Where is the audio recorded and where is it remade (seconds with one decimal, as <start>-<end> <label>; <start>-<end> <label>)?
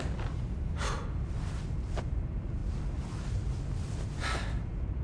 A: 0.0-5.0 recorded